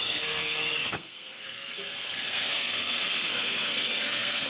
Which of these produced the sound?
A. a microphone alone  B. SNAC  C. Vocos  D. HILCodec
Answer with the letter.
B